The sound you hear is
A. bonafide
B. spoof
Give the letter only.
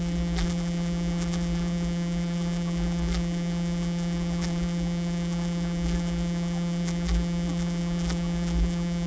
B